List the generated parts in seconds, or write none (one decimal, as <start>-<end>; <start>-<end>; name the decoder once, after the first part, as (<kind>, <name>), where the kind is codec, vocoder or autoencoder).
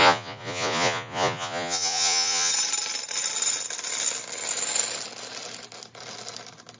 0.0-2.5 (vocoder, Vocos)